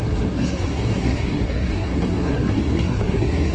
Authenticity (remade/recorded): remade